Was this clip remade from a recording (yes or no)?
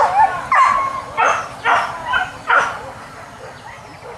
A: no